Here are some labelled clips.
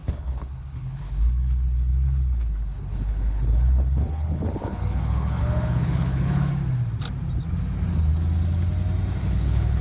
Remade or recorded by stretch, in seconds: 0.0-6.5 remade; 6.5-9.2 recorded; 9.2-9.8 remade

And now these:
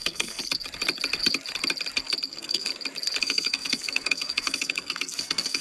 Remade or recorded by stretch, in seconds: 0.0-0.4 remade; 0.4-2.3 recorded; 2.3-2.7 remade; 2.7-3.2 recorded; 3.2-5.6 remade

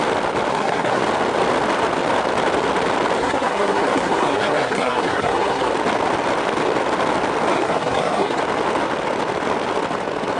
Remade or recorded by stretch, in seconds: 0.0-0.5 recorded; 0.5-1.0 remade; 1.0-3.2 recorded; 3.2-5.7 remade; 5.7-7.5 recorded; 7.5-8.4 remade; 8.4-10.4 recorded